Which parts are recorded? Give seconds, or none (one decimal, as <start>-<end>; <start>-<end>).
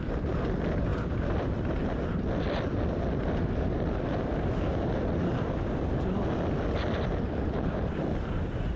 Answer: 0.0-4.7; 5.3-8.8